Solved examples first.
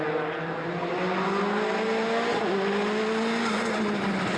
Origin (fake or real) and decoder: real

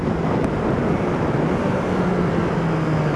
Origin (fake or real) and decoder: real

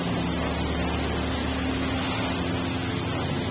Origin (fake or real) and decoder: real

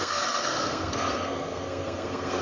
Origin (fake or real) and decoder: fake, codec, SNAC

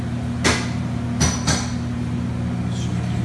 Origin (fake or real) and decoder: real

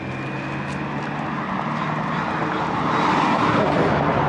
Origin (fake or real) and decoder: real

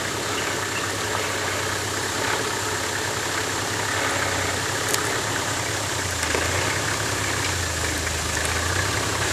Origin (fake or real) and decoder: real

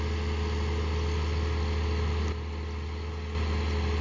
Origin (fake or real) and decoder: real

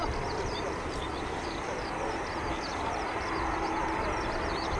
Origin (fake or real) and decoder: real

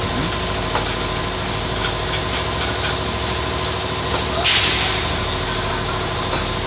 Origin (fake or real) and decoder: real